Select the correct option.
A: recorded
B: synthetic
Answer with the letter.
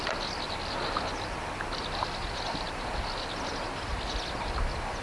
A